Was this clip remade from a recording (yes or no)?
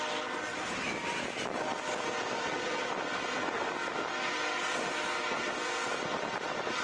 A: no